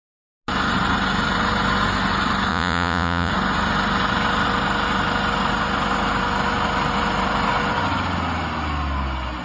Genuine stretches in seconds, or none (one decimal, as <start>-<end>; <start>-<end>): 0.0-2.5; 3.3-9.4